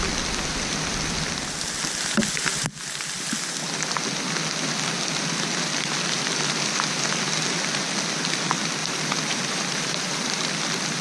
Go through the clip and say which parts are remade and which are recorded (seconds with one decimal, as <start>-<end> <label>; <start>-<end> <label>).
0.0-8.8 recorded; 8.8-10.4 remade; 10.4-11.0 recorded